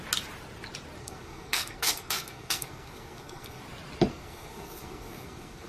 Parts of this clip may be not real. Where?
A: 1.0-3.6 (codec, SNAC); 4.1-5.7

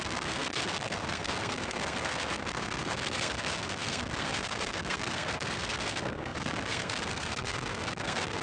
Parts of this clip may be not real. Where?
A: 0.0-8.4 (codec, SNAC)

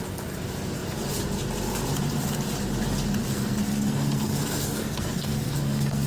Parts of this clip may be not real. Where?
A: 3.2-6.1 (codec, SNAC)

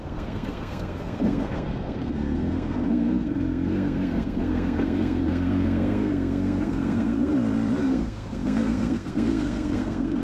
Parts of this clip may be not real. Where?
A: 0.0-7.3 (codec, SNAC); 7.8-10.2